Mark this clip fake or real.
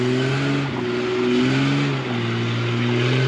real